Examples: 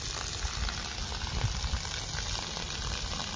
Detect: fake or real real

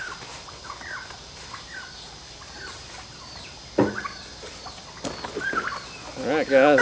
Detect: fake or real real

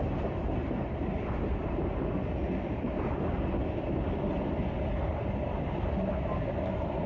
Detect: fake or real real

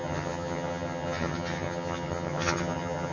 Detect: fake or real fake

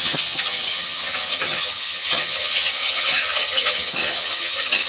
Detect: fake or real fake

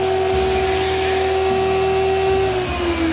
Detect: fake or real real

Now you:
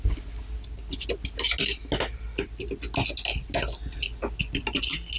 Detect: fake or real real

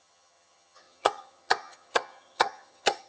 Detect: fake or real fake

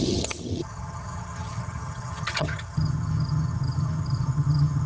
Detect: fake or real fake